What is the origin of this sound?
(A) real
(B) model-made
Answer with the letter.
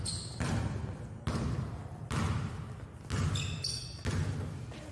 A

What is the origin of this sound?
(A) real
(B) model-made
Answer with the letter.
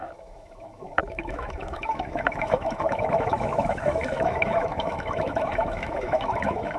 B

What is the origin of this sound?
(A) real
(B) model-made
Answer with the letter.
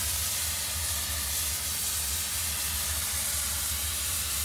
A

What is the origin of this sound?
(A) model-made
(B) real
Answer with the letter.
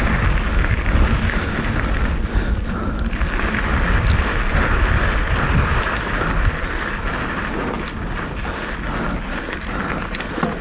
B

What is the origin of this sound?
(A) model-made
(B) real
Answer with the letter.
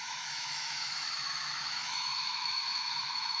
A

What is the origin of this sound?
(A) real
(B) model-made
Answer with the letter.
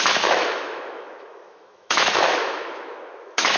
B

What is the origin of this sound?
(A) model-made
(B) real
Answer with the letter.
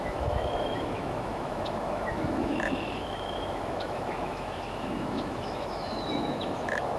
A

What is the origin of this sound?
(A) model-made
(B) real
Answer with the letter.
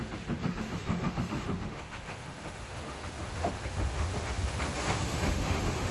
A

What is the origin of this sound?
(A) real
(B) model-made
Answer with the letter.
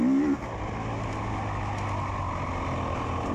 A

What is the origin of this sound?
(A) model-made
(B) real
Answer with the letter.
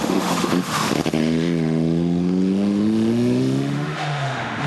A